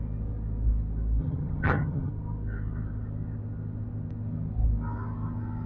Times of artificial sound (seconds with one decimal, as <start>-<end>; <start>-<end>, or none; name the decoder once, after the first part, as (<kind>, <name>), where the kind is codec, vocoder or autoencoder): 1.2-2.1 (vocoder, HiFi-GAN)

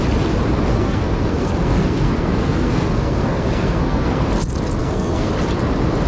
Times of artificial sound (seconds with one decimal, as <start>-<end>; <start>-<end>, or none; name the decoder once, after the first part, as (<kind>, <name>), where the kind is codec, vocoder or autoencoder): 0.7-4.2 (codec, SNAC); 4.8-5.3

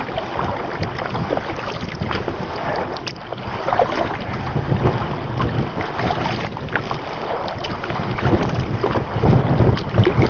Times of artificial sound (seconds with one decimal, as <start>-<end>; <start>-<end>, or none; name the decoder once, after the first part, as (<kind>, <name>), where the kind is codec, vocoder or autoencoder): none